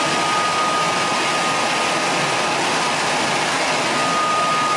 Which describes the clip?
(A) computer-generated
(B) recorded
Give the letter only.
B